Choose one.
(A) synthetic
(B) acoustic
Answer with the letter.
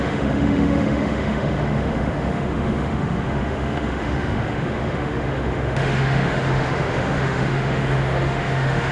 A